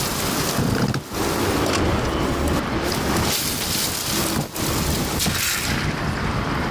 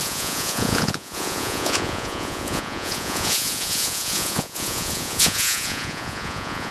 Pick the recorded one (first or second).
first